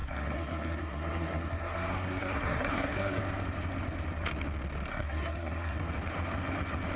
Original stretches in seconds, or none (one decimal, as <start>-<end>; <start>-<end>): 3.2-4.9; 5.9-7.0